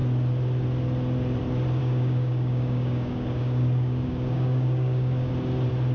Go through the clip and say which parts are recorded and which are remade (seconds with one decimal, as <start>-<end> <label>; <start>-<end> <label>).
0.0-1.8 recorded; 1.8-5.3 remade; 5.3-5.9 recorded